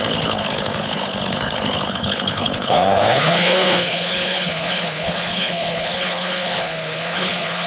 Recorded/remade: remade